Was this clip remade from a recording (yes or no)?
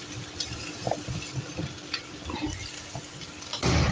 no